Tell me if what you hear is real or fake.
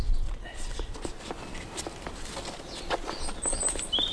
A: real